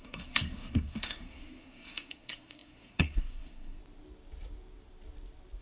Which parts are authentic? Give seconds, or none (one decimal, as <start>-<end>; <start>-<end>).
3.8-5.6